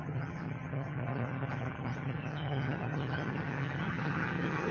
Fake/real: fake